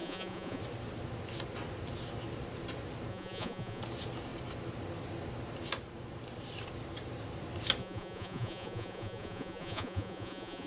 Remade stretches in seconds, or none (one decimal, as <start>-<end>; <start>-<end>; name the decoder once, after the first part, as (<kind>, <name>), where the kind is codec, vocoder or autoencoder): 0.0-0.6 (vocoder, Vocos); 3.1-3.8; 7.8-10.7